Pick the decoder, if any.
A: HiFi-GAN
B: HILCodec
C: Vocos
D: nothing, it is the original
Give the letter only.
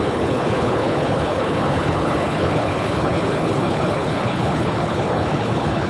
B